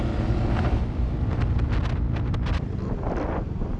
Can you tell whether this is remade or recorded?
remade